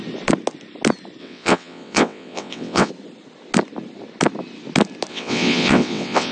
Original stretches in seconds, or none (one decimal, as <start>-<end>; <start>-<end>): 0.0-1.2; 2.9-5.1